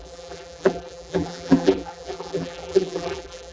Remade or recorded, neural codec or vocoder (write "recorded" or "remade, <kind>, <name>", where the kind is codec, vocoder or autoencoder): remade, vocoder, BigVGAN v2